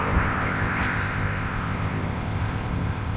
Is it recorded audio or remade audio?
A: remade